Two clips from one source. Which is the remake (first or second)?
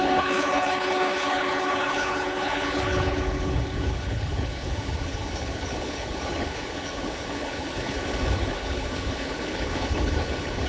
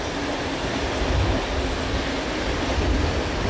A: first